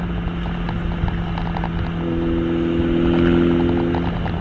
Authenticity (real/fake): real